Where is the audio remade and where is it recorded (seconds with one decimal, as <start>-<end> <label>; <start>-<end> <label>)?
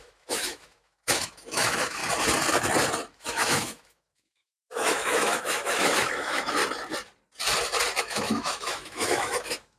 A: 0.0-2.0 remade; 2.0-3.1 recorded; 3.1-6.6 remade; 6.6-8.0 recorded; 8.0-9.8 remade